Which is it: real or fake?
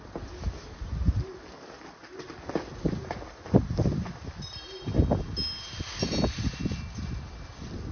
real